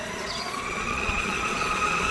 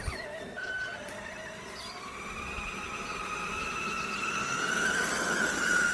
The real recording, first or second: second